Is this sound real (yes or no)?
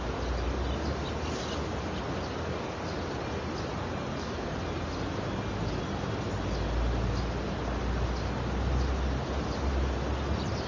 yes